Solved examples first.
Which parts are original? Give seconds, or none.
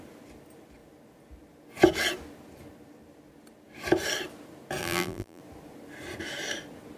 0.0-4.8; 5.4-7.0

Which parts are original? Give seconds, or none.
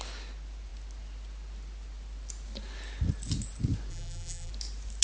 0.0-3.9; 4.5-5.0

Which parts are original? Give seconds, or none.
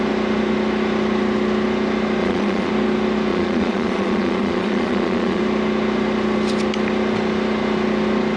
0.0-2.2; 2.7-3.3; 5.4-8.4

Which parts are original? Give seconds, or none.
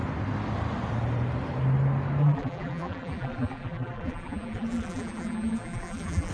0.0-2.2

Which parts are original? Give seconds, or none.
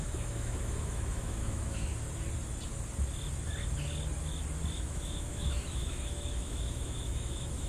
1.9-4.7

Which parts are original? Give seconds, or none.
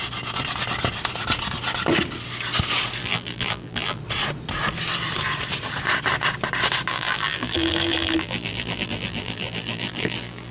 0.0-3.0; 4.0-6.9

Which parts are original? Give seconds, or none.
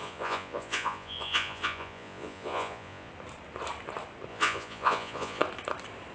3.1-4.3; 5.4-6.1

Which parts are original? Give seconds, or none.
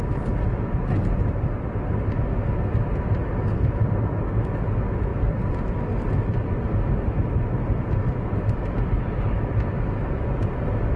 0.0-5.1; 6.9-11.0